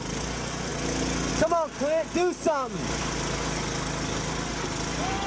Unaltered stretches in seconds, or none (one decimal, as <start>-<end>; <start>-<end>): 0.0-5.3